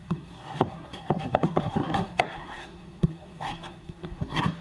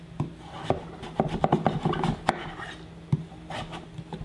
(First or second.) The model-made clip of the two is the first